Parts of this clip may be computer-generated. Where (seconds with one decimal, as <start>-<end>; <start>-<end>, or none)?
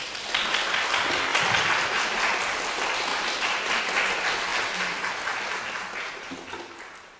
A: 1.3-2.2; 3.1-3.8